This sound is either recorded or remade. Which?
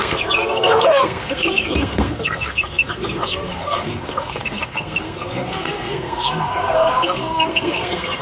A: remade